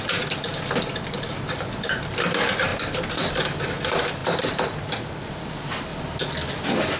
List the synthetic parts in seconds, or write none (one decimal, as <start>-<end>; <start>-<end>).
0.0-5.9; 6.5-7.0